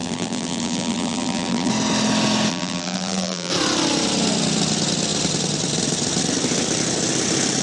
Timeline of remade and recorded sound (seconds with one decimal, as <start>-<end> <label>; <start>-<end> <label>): 0.0-1.7 remade; 1.7-2.5 recorded; 2.5-3.5 remade; 3.5-7.6 recorded